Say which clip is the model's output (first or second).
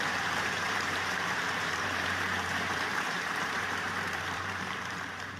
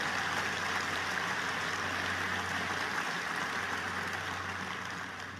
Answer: first